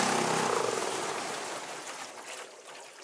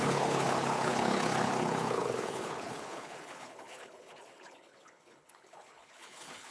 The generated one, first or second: second